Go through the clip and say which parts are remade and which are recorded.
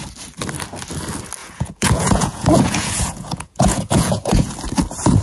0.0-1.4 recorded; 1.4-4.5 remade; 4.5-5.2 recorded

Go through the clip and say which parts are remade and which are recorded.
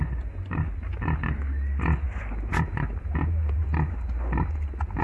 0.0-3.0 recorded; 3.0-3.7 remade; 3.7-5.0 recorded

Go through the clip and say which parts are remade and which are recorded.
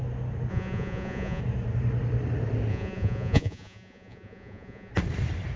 0.0-0.5 recorded; 0.5-1.4 remade; 1.4-2.7 recorded; 2.7-4.9 remade; 4.9-5.6 recorded